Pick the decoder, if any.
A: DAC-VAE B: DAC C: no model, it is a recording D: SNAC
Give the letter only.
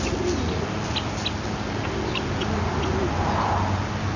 C